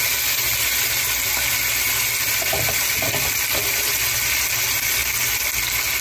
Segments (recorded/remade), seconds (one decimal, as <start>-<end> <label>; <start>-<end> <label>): 0.0-6.0 recorded

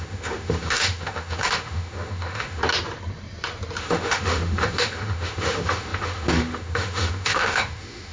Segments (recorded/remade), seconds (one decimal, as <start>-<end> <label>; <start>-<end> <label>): 0.0-2.6 remade; 2.6-3.8 recorded; 3.8-8.1 remade

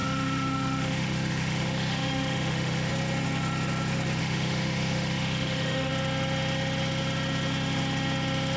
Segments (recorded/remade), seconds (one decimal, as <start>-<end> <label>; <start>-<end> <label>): 0.0-2.9 remade; 2.9-4.2 recorded; 4.2-5.9 remade; 5.9-8.6 recorded

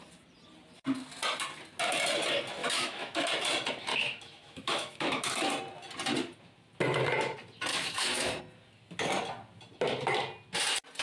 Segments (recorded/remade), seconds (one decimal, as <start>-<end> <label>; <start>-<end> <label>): 0.0-2.6 recorded; 2.6-3.3 remade; 3.3-3.9 recorded; 3.9-5.5 remade; 5.5-7.7 recorded; 7.7-8.4 remade; 8.4-11.0 recorded